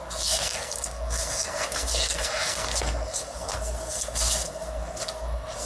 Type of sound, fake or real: fake